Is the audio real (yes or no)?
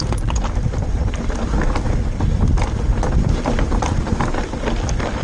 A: no